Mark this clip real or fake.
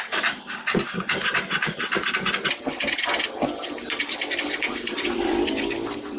real